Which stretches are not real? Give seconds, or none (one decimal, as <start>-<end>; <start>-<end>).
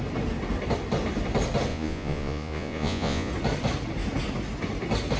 1.7-3.3